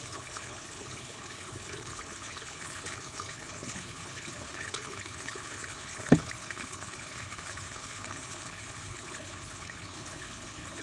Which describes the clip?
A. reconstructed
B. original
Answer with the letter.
A